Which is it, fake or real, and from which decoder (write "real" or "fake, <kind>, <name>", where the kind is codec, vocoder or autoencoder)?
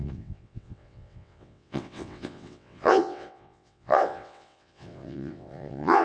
fake, vocoder, WaveNeXt